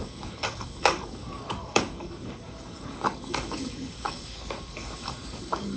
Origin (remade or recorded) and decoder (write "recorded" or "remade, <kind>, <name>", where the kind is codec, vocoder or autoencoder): remade, codec, DAC